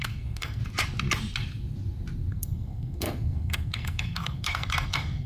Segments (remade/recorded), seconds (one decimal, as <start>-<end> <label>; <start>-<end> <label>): 0.0-0.6 remade; 0.6-2.3 recorded; 2.3-5.3 remade